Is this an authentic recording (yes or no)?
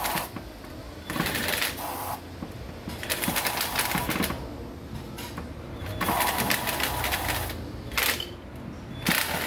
yes